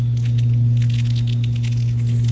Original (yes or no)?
yes